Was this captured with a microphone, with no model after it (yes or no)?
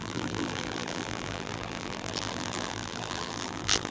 no